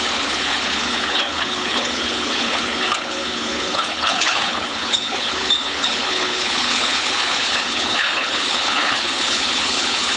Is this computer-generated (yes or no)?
yes